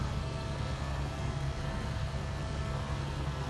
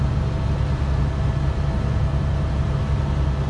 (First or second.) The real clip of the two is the second